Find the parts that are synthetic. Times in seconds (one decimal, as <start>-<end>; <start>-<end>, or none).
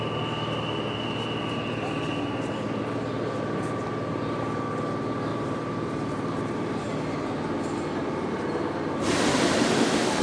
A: 5.3-6.9; 9.3-10.2